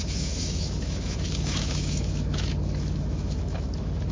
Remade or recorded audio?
remade